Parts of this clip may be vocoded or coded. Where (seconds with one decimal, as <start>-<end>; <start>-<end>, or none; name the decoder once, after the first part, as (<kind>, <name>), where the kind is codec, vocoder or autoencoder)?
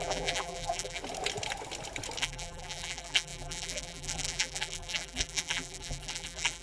0.0-1.0 (vocoder, BigVGAN v2); 2.2-6.6